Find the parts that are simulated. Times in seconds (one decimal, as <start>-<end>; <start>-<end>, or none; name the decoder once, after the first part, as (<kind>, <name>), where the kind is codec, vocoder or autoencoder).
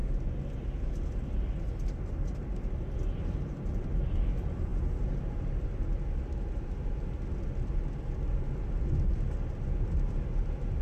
none